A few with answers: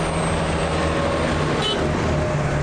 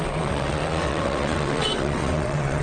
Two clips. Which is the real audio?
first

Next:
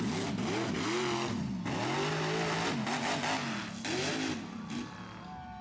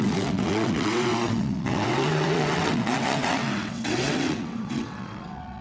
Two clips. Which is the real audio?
first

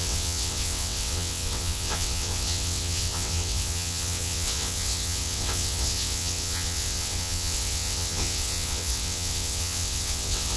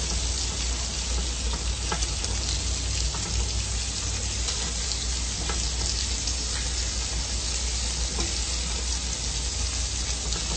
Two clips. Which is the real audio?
second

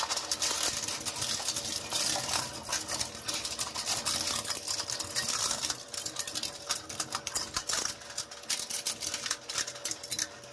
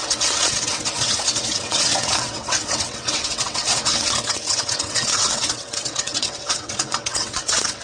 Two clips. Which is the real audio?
first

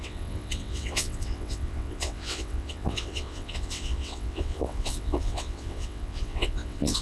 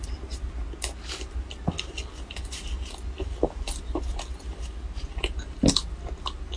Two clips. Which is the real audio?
second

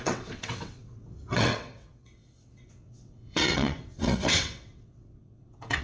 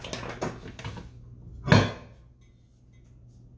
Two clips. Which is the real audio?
second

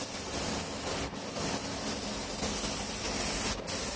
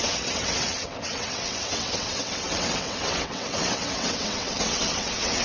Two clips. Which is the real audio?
first